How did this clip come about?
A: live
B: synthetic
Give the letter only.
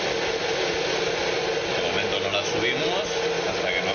A